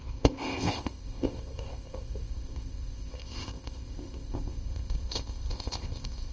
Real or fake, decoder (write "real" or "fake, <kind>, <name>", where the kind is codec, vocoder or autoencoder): fake, codec, ZipCodec